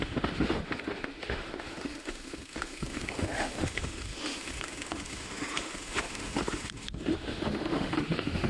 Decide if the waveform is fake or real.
fake